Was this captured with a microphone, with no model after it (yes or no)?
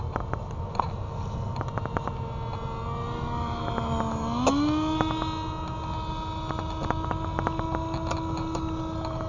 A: yes